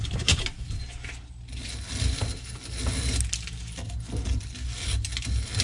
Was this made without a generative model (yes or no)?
yes